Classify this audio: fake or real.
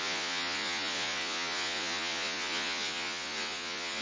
fake